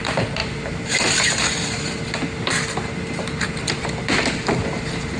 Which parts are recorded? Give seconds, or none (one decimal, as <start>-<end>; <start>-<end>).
0.0-0.4; 1.4-5.2